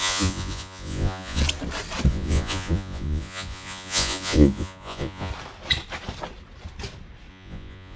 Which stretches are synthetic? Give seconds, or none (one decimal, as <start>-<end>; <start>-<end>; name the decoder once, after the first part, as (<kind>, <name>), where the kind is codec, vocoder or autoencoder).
0.0-1.4 (vocoder, Vocos); 2.1-5.3; 7.3-8.0

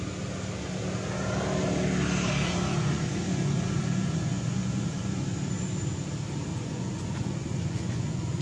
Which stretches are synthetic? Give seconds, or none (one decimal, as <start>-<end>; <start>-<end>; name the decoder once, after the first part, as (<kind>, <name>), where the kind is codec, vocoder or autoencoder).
2.7-5.2 (vocoder, Vocos); 6.5-8.4

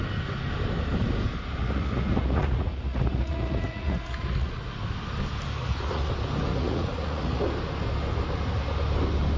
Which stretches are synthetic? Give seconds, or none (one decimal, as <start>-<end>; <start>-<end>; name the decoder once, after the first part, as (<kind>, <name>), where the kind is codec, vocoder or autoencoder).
1.6-4.7 (vocoder, Vocos); 5.6-6.1; 6.5-7.4

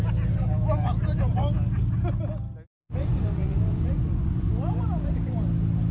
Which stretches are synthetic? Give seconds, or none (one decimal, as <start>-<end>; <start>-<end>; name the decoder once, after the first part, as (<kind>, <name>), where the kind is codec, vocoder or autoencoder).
2.8-4.5 (vocoder, Vocos)

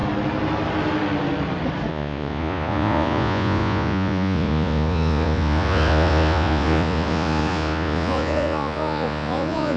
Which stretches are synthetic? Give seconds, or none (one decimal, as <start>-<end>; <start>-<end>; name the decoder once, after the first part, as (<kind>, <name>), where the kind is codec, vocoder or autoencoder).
1.9-9.8 (vocoder, Vocos)

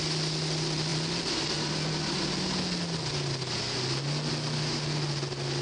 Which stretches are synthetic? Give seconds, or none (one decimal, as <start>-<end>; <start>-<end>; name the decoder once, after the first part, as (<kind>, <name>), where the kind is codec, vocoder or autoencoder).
none

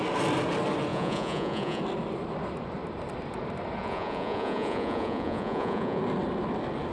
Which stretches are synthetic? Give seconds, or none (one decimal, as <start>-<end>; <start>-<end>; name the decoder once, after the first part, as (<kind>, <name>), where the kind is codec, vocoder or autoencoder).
0.9-1.8 (vocoder, Vocos); 3.8-6.0

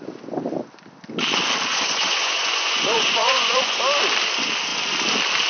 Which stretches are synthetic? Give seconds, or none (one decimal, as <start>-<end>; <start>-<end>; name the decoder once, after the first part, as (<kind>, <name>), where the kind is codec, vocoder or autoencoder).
1.7-3.8 (vocoder, Vocos)